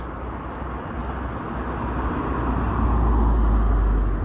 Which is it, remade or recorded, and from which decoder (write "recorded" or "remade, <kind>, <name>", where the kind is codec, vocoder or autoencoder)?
recorded